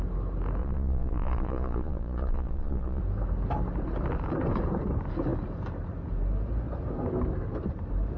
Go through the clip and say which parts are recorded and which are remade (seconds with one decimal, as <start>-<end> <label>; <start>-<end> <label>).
0.0-0.6 recorded; 0.6-3.0 remade; 3.0-8.2 recorded